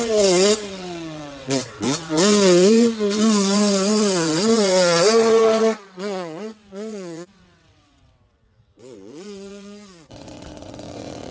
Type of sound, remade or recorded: remade